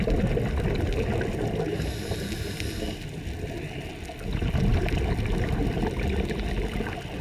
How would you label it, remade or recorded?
recorded